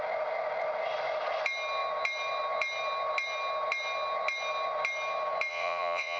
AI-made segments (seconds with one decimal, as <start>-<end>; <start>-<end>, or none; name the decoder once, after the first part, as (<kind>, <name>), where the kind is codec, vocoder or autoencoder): 5.5-6.2 (vocoder, Vocos)